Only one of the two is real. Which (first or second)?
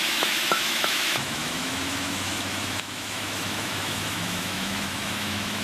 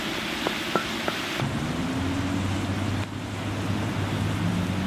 second